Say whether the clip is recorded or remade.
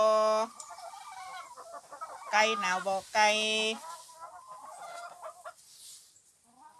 recorded